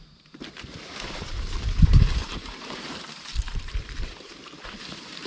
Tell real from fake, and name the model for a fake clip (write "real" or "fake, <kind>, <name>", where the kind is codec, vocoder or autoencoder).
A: fake, vocoder, BigVGAN v2